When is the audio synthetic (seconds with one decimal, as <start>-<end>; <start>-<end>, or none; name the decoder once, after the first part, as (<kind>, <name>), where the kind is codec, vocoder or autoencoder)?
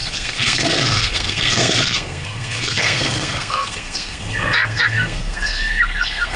0.0-6.4 (codec, SNAC)